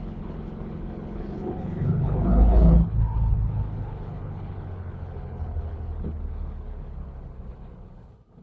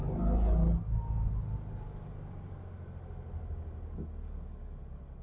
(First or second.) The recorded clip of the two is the second